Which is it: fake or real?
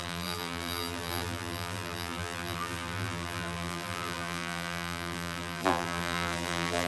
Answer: fake